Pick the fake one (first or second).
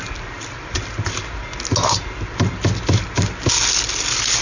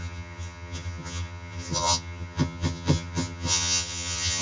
second